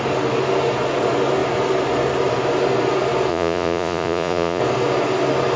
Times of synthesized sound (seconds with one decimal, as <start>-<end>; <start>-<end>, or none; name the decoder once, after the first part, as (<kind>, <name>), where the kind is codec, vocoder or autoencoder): 3.3-4.6 (vocoder, Vocos)